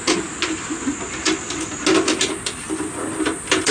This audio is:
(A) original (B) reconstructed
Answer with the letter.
A